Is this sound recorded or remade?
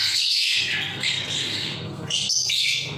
remade